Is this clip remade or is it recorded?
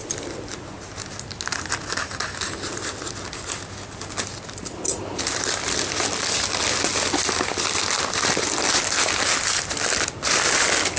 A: recorded